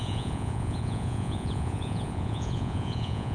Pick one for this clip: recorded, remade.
remade